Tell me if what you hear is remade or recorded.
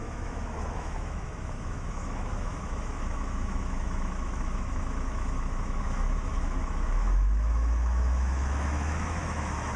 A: remade